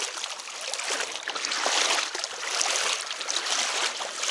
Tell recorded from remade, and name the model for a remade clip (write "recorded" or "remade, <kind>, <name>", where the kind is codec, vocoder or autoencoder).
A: recorded